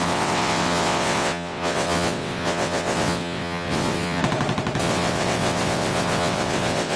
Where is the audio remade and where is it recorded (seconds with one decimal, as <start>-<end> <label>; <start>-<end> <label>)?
0.0-4.2 remade; 4.2-4.8 recorded; 4.8-7.0 remade

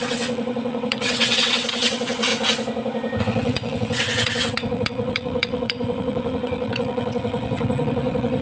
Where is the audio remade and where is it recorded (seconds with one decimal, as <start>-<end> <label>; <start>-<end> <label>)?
0.0-2.3 remade; 2.3-3.2 recorded; 3.2-8.4 remade

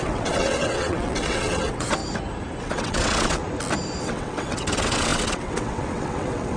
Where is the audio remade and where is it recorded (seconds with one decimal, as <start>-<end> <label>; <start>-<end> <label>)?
0.0-2.0 remade; 2.0-2.6 recorded; 2.6-3.4 remade; 3.4-4.0 recorded; 4.0-6.6 remade

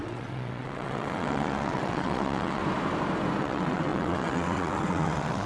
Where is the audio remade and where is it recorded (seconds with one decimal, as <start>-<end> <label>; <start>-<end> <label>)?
0.0-2.6 remade; 2.6-3.4 recorded; 3.4-5.5 remade

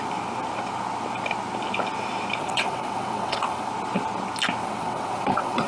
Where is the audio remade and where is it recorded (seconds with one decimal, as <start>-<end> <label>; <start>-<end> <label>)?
0.0-2.4 recorded; 2.4-3.7 remade; 3.7-4.6 recorded; 4.6-5.7 remade

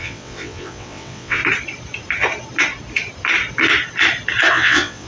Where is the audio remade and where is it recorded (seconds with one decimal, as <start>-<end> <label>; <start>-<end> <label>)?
0.0-1.4 remade; 1.4-4.5 recorded; 4.5-5.1 remade